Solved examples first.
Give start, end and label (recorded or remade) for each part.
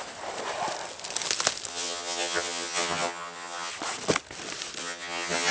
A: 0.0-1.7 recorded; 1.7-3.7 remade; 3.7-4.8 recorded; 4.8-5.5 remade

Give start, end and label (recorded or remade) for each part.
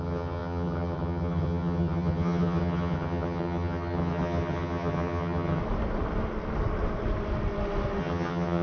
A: 0.0-5.6 remade; 5.6-8.0 recorded; 8.0-8.6 remade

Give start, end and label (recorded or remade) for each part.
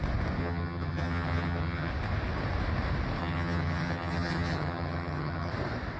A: 0.0-0.4 recorded; 0.4-1.9 remade; 1.9-3.2 recorded; 3.2-5.5 remade; 5.5-6.0 recorded